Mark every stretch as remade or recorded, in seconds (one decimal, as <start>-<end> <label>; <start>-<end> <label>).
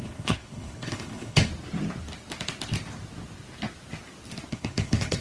0.0-1.5 remade; 1.5-4.5 recorded; 4.5-5.2 remade